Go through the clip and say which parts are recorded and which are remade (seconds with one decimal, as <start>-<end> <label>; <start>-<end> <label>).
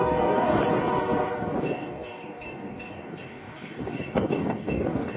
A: 0.0-0.6 remade; 0.6-1.6 recorded; 1.6-5.2 remade